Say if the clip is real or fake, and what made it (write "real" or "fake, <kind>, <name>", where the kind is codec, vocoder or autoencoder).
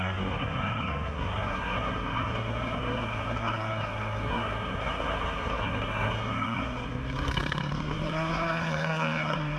fake, codec, SNAC